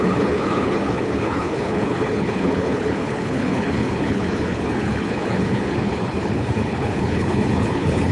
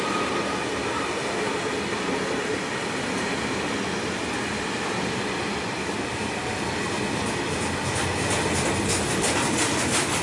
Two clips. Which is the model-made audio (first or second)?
first